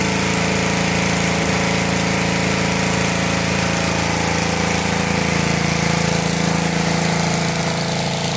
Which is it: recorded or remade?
recorded